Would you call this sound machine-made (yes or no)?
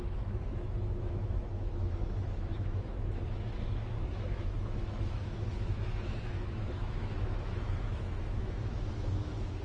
yes